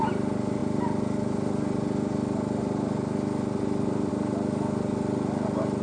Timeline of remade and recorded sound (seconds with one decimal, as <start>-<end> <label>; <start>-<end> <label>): 0.0-5.8 recorded